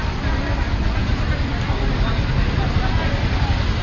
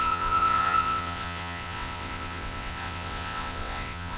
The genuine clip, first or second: first